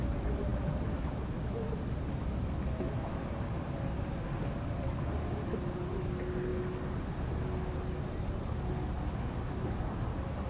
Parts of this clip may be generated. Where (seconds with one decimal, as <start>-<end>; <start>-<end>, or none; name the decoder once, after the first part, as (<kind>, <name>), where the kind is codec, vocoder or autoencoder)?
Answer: none